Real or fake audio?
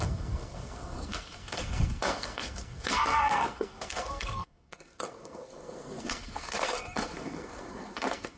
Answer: fake